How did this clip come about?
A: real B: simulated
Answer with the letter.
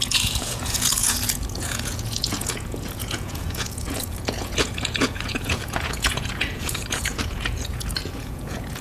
B